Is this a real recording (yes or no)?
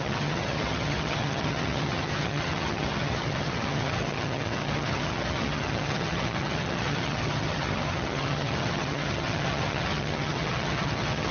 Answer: no